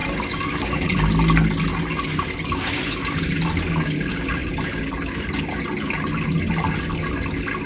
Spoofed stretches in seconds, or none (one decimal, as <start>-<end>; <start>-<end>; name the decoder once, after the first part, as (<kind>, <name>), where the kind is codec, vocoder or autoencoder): 4.4-5.3 (vocoder, BigVGAN v2)